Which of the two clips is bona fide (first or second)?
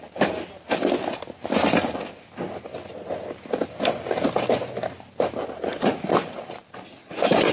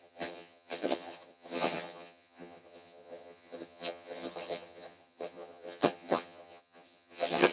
first